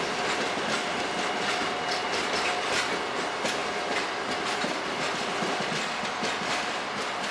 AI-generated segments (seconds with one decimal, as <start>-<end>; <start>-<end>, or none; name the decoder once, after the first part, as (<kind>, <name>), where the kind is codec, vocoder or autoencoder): none